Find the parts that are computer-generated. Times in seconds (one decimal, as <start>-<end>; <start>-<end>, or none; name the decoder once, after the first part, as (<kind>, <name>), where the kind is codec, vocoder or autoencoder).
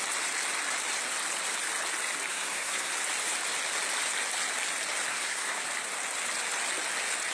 2.3-2.9 (codec, SNAC); 5.1-5.6